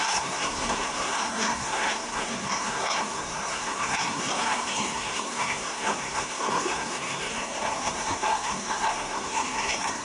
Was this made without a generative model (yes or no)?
no